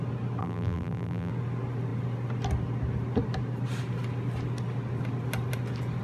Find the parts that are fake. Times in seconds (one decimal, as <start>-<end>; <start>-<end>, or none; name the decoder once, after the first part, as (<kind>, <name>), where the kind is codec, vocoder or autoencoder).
0.4-1.3 (vocoder, BigVGAN v2)